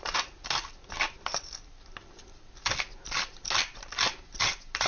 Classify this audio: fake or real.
real